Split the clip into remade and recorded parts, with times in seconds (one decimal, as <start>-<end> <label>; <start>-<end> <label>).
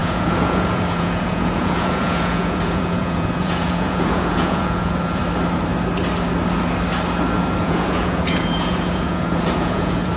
0.0-5.2 remade; 5.2-7.6 recorded; 7.6-10.2 remade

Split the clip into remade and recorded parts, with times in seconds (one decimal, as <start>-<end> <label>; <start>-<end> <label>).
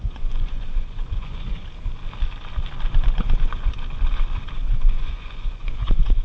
0.0-1.6 remade; 1.6-4.7 recorded; 4.7-6.2 remade